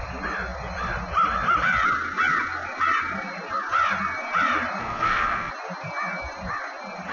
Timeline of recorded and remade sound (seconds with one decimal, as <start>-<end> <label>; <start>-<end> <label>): 0.0-4.8 recorded; 4.8-5.5 remade; 5.5-7.1 recorded